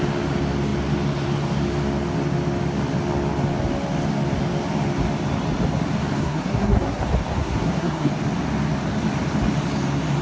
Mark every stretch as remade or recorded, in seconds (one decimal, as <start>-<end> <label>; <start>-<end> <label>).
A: 0.0-6.2 recorded; 6.2-7.0 remade; 7.0-7.4 recorded; 7.4-8.1 remade; 8.1-10.2 recorded